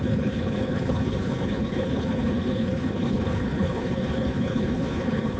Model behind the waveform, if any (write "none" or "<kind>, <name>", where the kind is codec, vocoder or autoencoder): codec, HILCodec